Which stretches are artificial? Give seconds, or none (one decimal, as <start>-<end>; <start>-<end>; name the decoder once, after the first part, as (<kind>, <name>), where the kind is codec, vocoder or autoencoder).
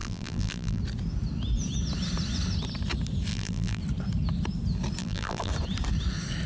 0.0-0.8 (vocoder, BigVGAN v2); 3.3-3.8; 5.0-5.5